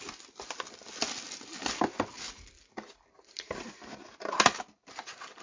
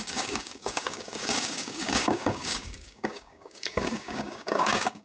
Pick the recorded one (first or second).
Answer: first